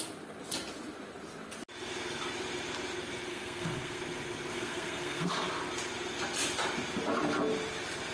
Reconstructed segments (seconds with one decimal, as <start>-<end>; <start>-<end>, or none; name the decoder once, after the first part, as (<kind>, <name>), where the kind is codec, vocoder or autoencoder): 3.3-4.0 (codec, SNAC); 4.5-5.3